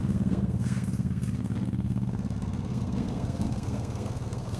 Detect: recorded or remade remade